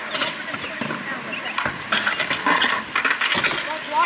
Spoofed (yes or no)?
no